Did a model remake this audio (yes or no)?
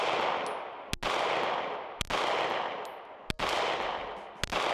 no